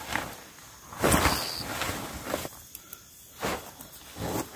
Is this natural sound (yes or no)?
yes